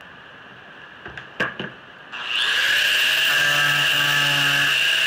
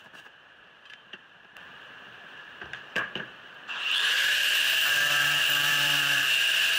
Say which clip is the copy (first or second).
second